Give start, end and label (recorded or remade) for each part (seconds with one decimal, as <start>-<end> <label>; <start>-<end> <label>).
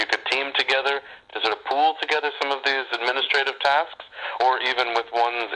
0.0-1.3 recorded; 1.3-4.4 remade; 4.4-5.6 recorded